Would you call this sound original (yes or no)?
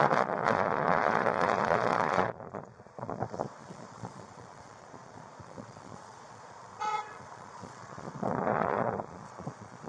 no